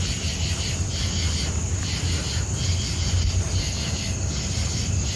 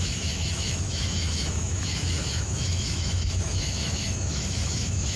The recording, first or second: first